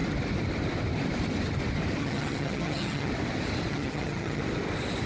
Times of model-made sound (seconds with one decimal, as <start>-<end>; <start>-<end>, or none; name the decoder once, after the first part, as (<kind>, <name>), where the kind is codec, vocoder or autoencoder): 2.0-3.1 (vocoder, HiFi-GAN); 3.7-4.4

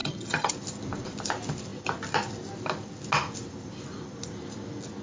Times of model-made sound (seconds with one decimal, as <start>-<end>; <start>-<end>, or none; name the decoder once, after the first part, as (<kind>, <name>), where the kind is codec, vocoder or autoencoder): 0.0-0.5 (vocoder, HiFi-GAN)